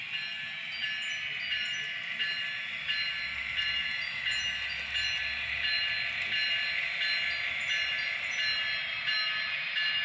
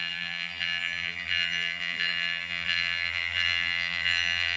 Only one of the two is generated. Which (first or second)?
second